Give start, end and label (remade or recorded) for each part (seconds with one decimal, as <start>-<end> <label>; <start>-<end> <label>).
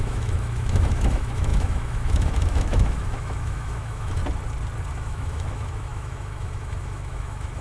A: 0.0-4.2 remade; 4.2-4.9 recorded; 4.9-7.6 remade